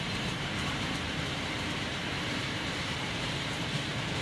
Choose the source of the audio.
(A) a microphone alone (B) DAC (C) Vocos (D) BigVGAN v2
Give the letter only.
D